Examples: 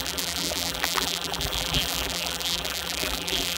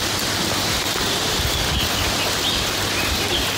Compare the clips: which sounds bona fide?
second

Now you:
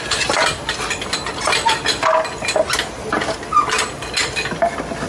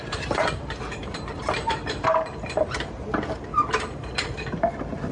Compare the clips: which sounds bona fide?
first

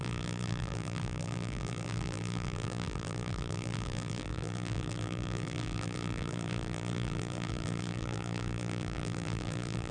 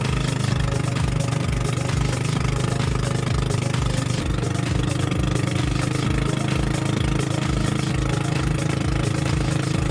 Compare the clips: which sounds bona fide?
second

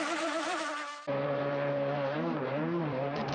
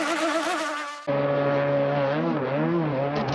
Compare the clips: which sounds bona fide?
second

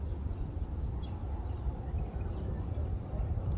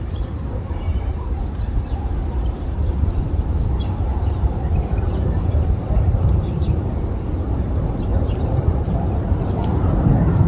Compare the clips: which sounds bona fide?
first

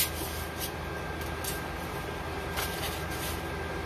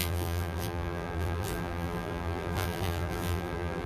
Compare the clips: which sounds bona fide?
first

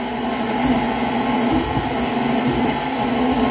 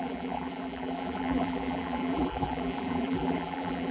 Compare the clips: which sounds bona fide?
first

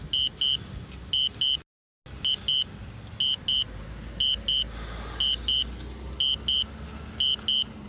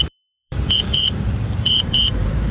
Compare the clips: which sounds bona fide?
first